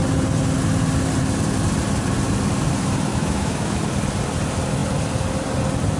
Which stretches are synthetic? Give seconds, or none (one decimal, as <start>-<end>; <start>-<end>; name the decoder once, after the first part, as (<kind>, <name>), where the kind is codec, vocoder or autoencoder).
3.1-3.8 (autoencoder, DAC-VAE)